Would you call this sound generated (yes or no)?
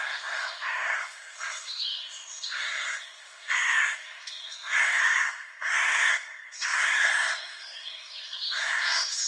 yes